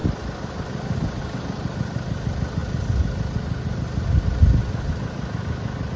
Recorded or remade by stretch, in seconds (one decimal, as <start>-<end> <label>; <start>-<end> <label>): 0.0-6.0 recorded